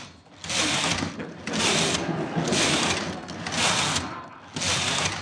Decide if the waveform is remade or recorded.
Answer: recorded